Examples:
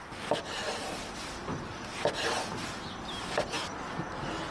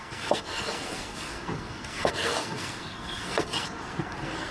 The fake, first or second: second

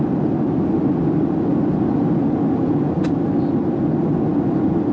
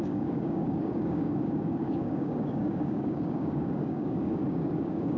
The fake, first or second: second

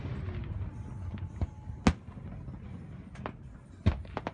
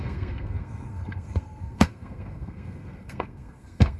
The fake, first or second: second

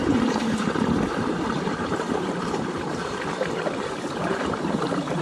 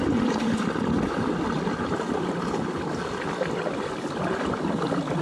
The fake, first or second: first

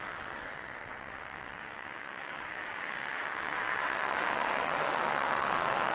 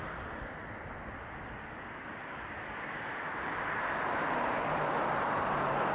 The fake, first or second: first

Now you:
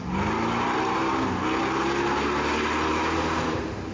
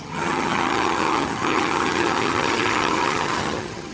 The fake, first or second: second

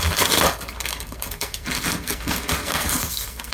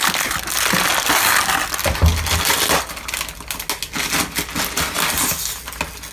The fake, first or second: first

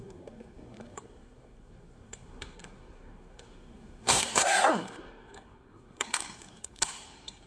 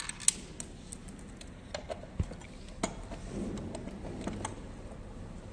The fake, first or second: first